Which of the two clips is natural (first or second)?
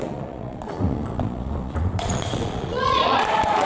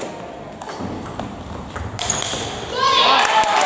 second